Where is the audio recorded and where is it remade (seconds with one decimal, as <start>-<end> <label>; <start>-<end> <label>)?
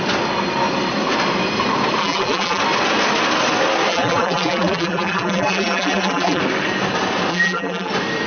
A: 0.0-2.0 recorded; 2.0-2.6 remade; 2.6-3.9 recorded; 3.9-6.4 remade; 6.4-7.3 recorded; 7.3-7.9 remade; 7.9-8.3 recorded